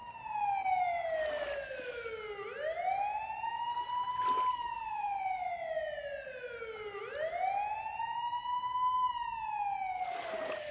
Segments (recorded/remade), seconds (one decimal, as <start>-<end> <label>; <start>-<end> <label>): 0.0-10.7 recorded